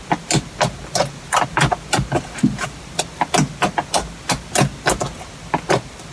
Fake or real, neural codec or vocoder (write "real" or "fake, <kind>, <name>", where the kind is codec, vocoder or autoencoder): real